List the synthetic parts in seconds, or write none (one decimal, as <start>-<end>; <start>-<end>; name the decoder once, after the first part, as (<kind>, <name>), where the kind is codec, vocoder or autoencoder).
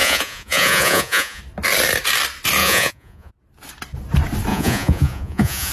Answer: 0.0-1.4 (vocoder, Vocos); 2.6-3.3; 4.5-5.7